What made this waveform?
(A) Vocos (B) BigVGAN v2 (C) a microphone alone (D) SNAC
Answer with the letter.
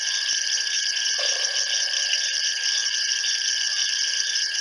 B